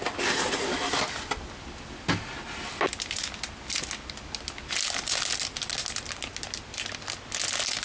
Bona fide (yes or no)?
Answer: yes